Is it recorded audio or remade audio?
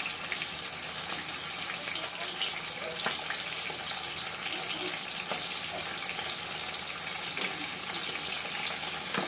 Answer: recorded